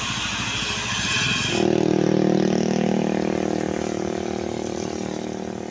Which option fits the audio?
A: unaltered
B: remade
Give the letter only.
A